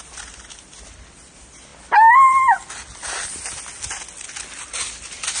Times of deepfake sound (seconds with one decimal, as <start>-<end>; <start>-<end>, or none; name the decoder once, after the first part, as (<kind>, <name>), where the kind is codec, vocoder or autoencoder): none